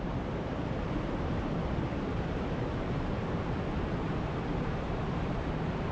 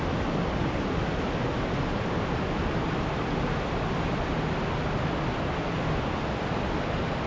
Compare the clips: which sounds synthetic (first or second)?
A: first